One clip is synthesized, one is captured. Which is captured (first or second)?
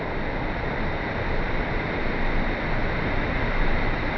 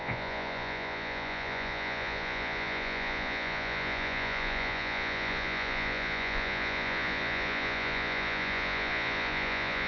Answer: first